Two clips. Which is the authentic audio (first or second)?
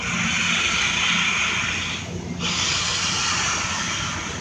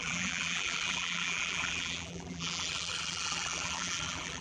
first